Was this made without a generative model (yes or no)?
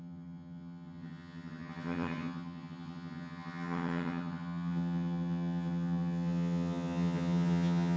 no